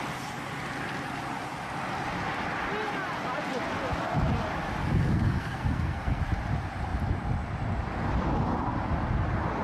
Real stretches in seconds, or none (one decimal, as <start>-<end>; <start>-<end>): 0.0-4.8; 6.2-9.6